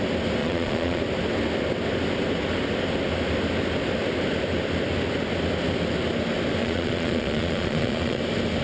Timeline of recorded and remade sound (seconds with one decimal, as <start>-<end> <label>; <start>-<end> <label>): 0.0-0.4 recorded; 0.4-1.0 remade; 1.0-6.6 recorded; 6.6-8.2 remade; 8.2-8.6 recorded